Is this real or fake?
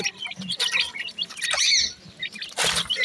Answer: real